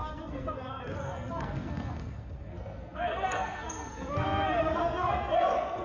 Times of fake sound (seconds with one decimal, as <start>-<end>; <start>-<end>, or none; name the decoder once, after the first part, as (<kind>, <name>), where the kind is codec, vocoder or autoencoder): 0.0-5.8 (codec, SNAC)